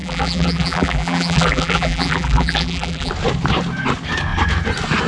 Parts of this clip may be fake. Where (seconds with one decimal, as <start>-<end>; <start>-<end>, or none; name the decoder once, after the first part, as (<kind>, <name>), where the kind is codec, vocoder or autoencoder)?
0.0-3.1 (vocoder, BigVGAN v2)